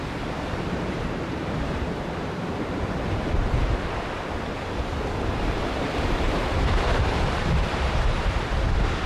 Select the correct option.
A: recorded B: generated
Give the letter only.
B